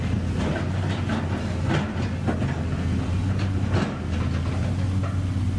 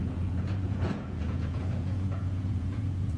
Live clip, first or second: first